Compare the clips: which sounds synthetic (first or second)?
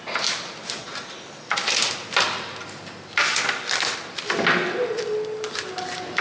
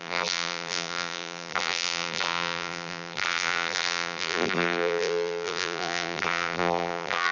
second